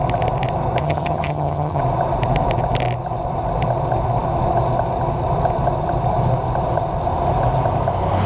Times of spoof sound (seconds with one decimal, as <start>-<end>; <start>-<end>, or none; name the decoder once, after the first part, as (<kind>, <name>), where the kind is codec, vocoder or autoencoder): 0.8-1.8 (vocoder, HiFi-GAN)

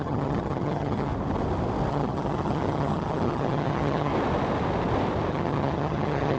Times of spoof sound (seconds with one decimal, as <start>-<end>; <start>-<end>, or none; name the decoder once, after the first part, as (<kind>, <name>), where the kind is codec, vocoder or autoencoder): 0.0-1.1 (vocoder, HiFi-GAN); 1.9-4.1; 5.3-6.4

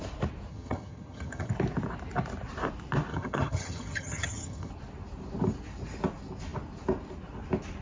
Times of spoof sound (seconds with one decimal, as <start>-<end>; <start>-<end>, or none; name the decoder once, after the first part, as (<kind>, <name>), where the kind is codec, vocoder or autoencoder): 0.5-1.5 (vocoder, HiFi-GAN); 3.1-4.7